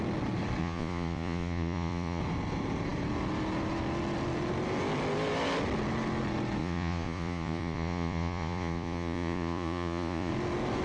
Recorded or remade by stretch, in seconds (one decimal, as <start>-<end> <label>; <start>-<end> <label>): 0.0-0.6 recorded; 0.6-2.2 remade; 2.2-6.6 recorded; 6.6-10.3 remade; 10.3-10.8 recorded